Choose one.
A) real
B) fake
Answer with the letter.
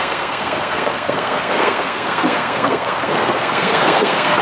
B